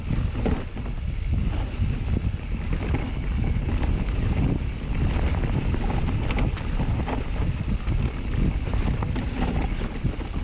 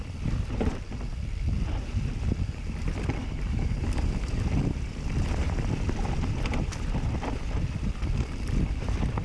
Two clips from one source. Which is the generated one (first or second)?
second